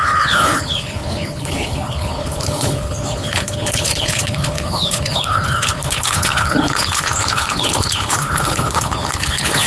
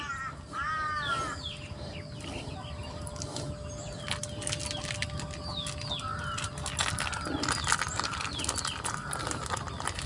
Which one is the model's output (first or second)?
first